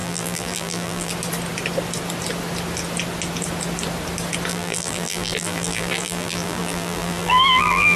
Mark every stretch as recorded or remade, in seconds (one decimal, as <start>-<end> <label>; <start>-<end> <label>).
0.0-1.1 remade; 1.1-4.5 recorded; 4.5-8.0 remade